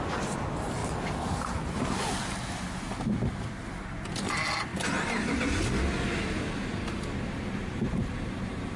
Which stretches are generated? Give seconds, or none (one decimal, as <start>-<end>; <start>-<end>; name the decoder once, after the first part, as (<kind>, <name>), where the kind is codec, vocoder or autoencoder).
7.6-8.8 (vocoder, BigVGAN v2)